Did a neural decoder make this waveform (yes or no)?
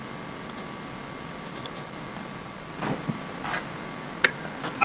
no